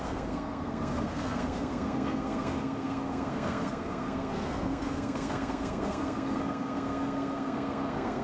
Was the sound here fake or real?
fake